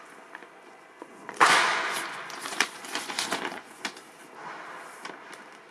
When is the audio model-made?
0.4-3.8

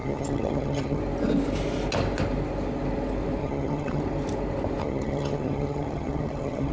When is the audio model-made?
0.0-1.0; 3.4-4.0; 4.8-6.7

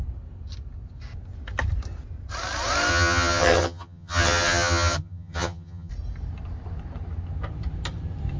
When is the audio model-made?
2.9-5.9